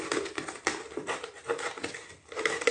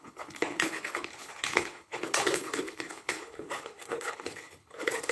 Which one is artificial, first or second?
second